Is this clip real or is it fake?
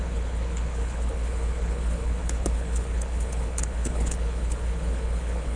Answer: fake